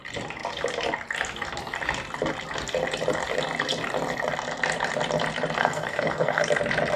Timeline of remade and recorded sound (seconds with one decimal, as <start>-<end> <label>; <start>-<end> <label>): 0.0-5.6 recorded; 5.6-6.5 remade; 6.5-7.0 recorded